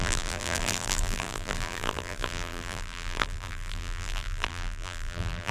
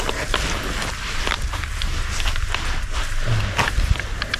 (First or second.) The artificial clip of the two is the first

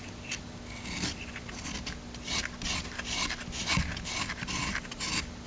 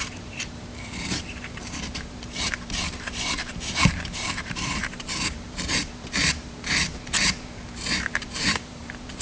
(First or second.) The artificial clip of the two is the second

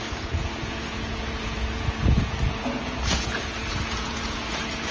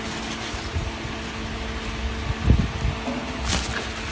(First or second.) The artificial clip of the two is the first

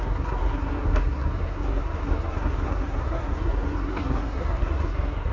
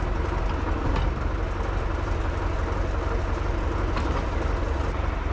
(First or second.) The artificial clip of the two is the first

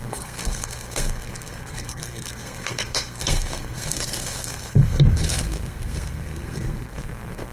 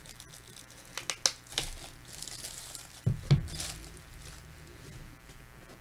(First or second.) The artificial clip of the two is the first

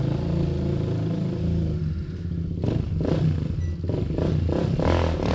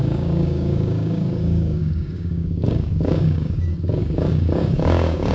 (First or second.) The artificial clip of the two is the second